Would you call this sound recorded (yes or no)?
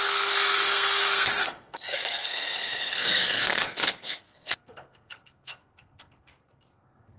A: no